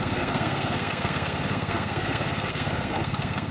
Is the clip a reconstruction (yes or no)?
yes